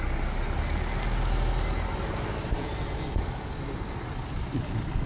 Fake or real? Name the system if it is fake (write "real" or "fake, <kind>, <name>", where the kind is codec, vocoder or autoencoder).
real